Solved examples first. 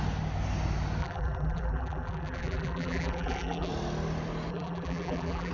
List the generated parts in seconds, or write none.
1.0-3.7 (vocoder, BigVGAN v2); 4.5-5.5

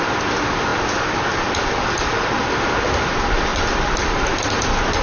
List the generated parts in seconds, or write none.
0.7-2.7 (vocoder, BigVGAN v2); 3.5-4.4